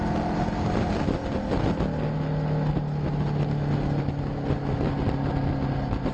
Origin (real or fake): real